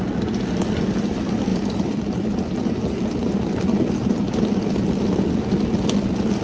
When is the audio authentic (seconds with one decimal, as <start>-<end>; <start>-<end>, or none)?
0.0-1.5; 5.3-6.4